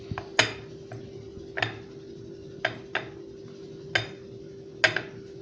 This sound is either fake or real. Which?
real